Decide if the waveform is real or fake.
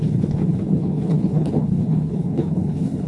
fake